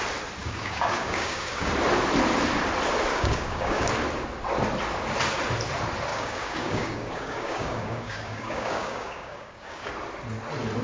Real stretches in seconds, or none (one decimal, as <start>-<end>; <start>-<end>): 0.0-0.4; 1.7-3.1; 3.9-6.1; 9.9-10.8